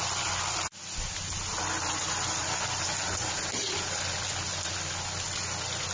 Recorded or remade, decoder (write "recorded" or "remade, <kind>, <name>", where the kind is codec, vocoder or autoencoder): recorded